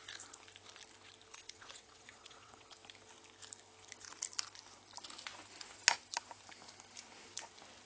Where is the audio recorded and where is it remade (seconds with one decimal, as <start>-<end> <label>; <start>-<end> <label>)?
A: 0.0-1.3 recorded; 1.3-2.7 remade; 2.7-7.9 recorded